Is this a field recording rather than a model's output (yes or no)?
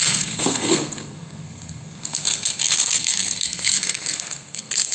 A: no